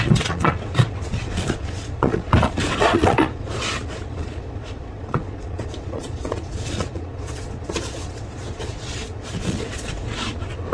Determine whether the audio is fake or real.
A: fake